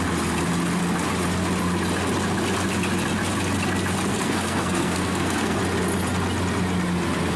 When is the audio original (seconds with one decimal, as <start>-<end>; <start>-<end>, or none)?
0.0-4.1; 5.6-7.4